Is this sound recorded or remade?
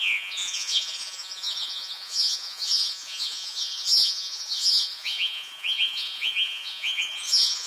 remade